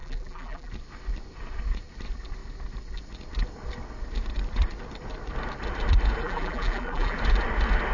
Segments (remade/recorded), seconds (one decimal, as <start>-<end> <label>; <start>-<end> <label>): 0.0-0.7 remade; 0.7-6.2 recorded; 6.2-7.2 remade; 7.2-7.9 recorded